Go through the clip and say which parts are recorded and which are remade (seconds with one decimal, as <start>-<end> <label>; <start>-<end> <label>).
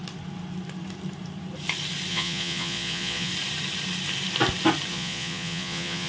0.0-2.1 recorded; 2.1-3.3 remade; 3.3-4.9 recorded; 4.9-6.1 remade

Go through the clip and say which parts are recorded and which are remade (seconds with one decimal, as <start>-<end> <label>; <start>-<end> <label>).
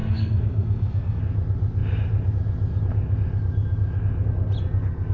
0.0-1.2 remade; 1.2-5.1 recorded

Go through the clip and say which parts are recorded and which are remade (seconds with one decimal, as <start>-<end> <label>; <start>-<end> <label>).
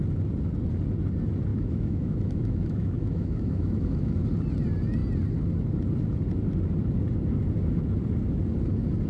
0.0-1.5 recorded; 1.5-4.2 remade; 4.2-9.1 recorded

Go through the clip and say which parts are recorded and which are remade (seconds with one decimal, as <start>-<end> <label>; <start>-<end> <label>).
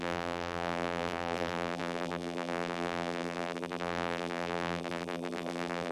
0.0-5.9 remade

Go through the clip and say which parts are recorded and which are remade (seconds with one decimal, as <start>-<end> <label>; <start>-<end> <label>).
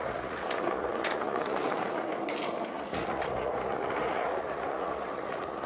0.0-2.1 remade; 2.1-2.7 recorded; 2.7-5.7 remade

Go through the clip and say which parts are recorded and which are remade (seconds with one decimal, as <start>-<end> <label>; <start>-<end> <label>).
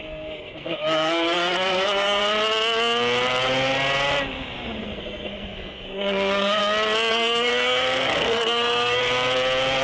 0.0-2.2 remade; 2.2-4.8 recorded; 4.8-6.6 remade; 6.6-7.1 recorded; 7.1-9.0 remade; 9.0-9.8 recorded